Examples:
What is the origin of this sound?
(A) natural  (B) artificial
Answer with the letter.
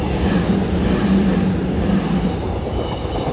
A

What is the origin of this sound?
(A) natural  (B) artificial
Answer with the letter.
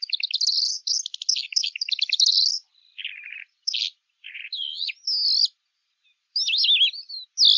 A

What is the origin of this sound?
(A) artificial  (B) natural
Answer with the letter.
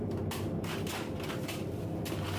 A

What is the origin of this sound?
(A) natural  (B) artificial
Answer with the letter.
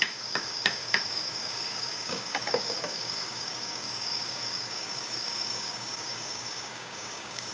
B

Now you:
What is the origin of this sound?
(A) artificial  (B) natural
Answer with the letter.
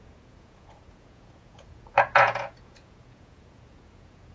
A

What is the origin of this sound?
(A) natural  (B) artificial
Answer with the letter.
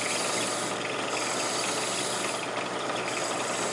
A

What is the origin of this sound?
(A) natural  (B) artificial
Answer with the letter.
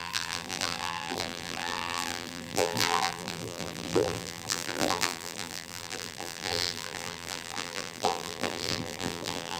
B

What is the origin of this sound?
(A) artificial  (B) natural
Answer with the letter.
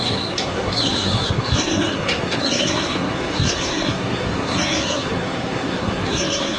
A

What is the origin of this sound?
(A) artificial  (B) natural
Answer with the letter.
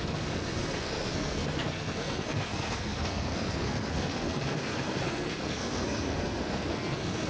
A